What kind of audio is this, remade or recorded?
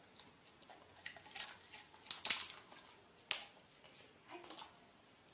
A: recorded